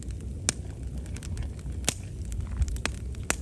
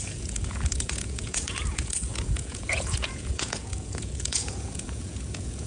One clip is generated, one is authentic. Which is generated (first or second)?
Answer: second